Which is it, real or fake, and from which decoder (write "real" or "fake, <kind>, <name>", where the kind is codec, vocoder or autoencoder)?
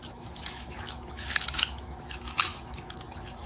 fake, autoencoder, DAC-VAE